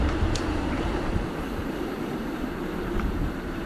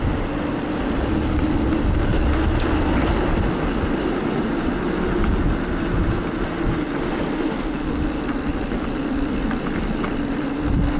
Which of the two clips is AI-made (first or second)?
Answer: first